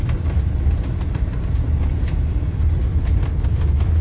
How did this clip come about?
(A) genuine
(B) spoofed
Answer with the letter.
A